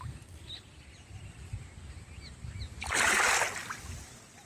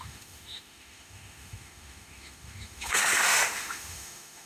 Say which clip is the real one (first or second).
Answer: first